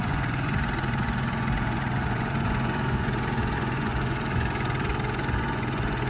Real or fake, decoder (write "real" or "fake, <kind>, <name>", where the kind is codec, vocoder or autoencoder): fake, vocoder, Vocos